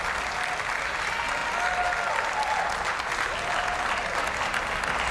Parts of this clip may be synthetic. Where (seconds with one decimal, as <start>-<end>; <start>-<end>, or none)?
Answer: none